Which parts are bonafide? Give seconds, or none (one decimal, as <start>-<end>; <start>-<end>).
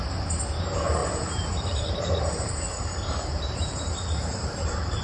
0.0-1.0; 2.6-3.3